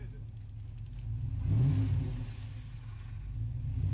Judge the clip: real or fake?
real